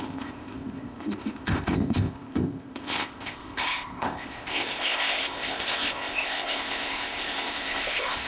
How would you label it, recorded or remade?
remade